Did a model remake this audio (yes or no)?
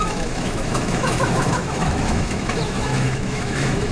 yes